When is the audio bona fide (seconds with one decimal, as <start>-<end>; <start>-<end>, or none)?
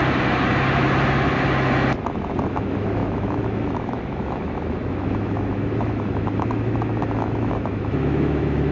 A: 0.0-2.5